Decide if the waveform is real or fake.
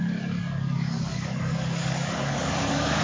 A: fake